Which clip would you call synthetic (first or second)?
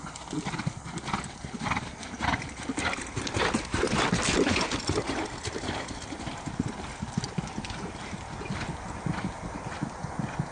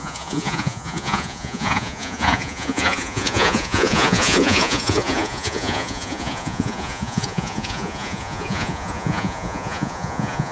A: second